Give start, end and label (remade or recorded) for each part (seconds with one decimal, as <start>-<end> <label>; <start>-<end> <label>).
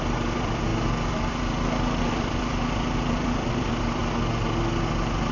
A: 0.0-4.0 remade; 4.0-4.8 recorded; 4.8-5.3 remade